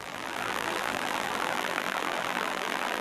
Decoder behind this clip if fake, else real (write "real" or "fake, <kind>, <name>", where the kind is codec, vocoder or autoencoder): fake, vocoder, BigVGAN v2